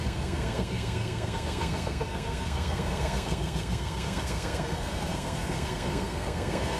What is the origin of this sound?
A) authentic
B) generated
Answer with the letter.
B